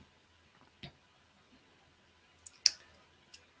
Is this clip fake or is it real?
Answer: real